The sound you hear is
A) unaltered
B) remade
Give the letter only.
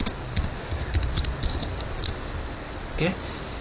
A